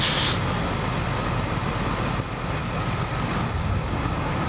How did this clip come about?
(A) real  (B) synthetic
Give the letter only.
A